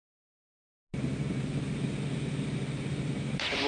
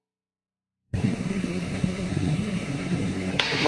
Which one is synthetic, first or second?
second